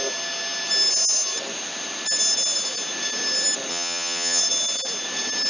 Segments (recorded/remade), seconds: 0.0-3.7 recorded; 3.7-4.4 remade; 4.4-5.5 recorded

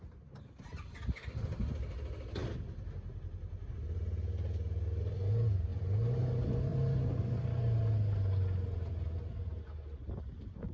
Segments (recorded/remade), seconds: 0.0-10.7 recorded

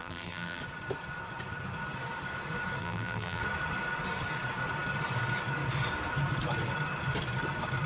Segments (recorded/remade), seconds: 0.0-0.6 remade; 0.6-2.8 recorded; 2.8-3.4 remade; 3.4-7.9 recorded

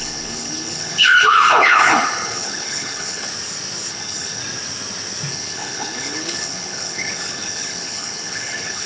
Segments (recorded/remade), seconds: 0.0-3.3 remade; 3.3-3.9 recorded; 3.9-4.4 remade; 4.4-5.3 recorded; 5.3-8.9 remade